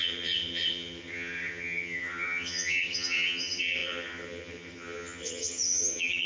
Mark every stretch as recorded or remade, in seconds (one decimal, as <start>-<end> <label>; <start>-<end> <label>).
0.0-6.3 remade